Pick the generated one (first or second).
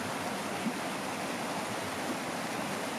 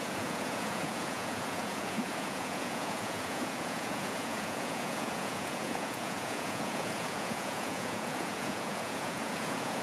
second